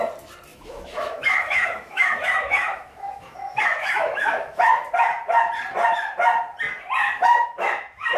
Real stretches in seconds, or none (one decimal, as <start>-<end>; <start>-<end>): 0.0-0.5; 4.7-7.0